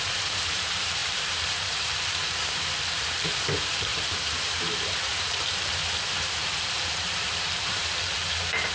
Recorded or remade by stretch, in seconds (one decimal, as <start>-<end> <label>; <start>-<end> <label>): 0.0-8.7 remade